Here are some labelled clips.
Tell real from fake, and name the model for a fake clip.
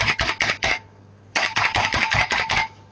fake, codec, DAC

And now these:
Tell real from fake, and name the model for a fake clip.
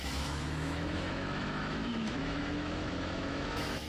fake, autoencoder, DAC-VAE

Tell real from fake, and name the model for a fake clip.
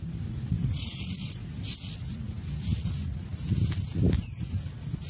real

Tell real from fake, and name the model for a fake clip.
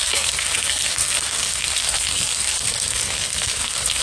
fake, codec, SNAC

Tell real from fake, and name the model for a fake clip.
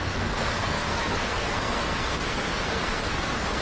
fake, codec, SNAC